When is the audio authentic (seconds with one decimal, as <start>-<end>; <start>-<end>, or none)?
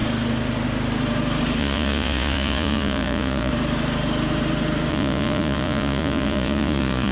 0.0-1.6; 3.5-4.9